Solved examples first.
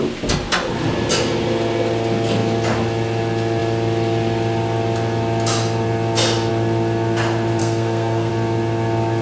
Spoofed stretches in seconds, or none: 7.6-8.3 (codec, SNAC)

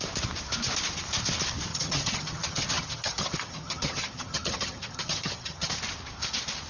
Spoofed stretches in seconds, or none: 1.7-5.7 (vocoder, HiFi-GAN)

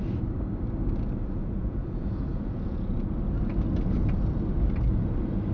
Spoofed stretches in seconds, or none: 1.4-3.1 (vocoder, Vocos)